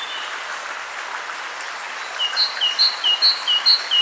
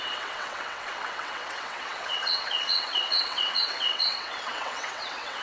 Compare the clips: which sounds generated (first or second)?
second